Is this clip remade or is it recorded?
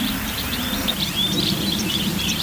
remade